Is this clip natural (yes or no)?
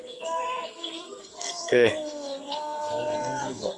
no